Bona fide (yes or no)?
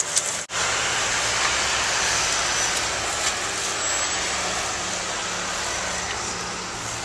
yes